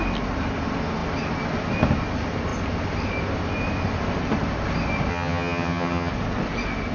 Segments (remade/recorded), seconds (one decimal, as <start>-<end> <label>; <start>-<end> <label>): 0.0-5.1 recorded; 5.1-6.1 remade; 6.1-6.9 recorded

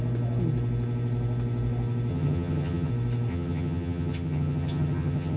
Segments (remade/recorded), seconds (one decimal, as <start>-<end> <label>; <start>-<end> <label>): 0.0-2.1 recorded; 2.1-2.9 remade; 2.9-3.3 recorded; 3.3-5.4 remade

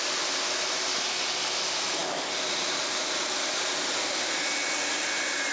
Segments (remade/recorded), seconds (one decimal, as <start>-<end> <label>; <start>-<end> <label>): 0.0-5.5 recorded

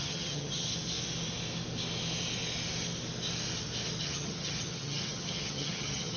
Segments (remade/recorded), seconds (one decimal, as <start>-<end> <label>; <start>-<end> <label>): 0.0-0.7 remade; 0.7-4.0 recorded; 4.0-6.2 remade

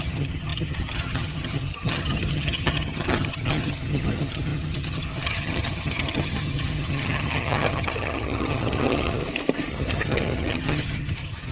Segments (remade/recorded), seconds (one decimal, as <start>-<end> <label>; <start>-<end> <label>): 0.0-9.2 remade; 9.2-9.7 recorded; 9.7-11.5 remade

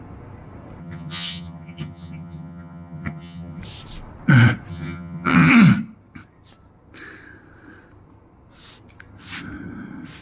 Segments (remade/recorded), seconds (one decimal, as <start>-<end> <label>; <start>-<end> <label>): 0.0-0.8 recorded; 0.8-3.6 remade; 3.6-4.7 recorded; 4.7-5.5 remade; 5.5-10.2 recorded